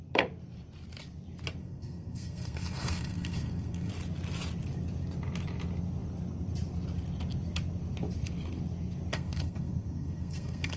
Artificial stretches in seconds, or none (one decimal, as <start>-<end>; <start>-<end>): 1.6-3.9; 9.1-10.8